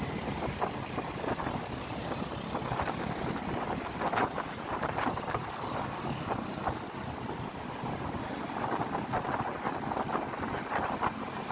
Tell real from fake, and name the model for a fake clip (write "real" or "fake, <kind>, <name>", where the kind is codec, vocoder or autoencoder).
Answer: real